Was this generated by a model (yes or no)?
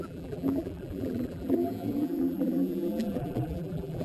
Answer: yes